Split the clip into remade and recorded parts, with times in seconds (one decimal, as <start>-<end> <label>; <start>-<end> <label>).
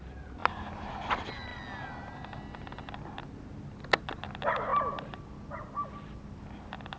0.0-7.0 recorded